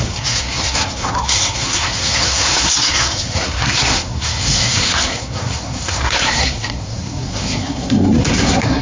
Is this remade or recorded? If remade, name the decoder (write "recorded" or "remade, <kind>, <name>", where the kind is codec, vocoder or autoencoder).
remade, codec, SNAC